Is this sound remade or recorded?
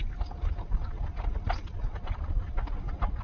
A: recorded